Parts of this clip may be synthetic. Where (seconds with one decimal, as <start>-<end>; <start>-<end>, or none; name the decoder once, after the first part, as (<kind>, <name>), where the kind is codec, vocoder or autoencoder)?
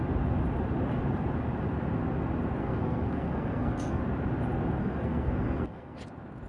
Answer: 2.6-4.0 (codec, SNAC); 4.8-6.0